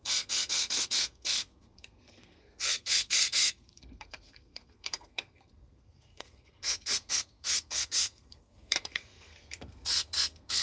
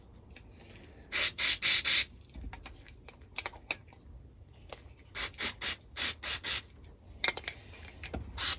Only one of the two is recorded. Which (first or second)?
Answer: second